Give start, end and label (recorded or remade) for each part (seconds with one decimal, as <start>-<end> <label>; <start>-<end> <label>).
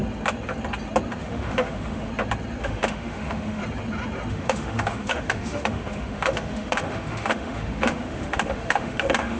0.0-1.2 recorded; 1.2-2.1 remade; 2.1-2.6 recorded; 2.6-3.6 remade; 3.6-4.3 recorded; 4.3-9.4 remade